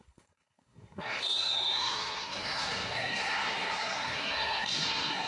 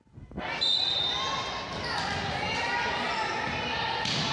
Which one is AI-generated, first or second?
first